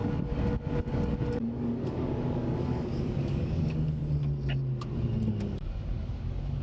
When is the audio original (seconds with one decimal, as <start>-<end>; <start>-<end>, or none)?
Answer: 4.0-5.3